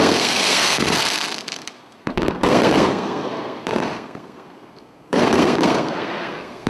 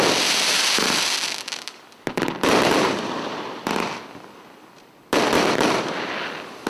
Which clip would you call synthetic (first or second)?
first